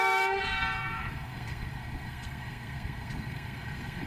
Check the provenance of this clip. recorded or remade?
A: remade